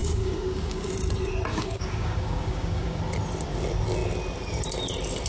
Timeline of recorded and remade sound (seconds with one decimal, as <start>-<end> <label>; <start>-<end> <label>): 0.0-0.9 remade; 0.9-1.5 recorded; 1.5-3.0 remade; 3.0-5.3 recorded